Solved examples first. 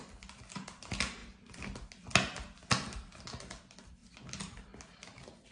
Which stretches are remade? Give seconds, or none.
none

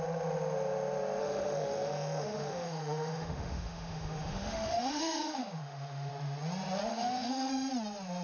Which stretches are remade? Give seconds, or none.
1.2-6.1; 6.9-7.5

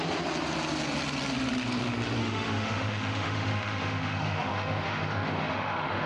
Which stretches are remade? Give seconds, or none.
2.2-6.1